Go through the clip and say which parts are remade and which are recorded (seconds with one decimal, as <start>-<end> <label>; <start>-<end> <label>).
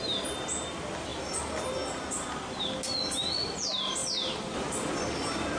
0.0-5.6 recorded